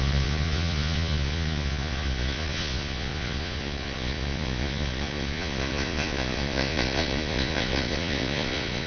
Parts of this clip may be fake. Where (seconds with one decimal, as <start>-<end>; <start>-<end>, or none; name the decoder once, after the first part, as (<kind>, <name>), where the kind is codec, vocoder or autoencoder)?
0.0-8.9 (vocoder, Vocos)